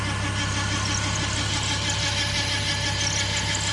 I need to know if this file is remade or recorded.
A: recorded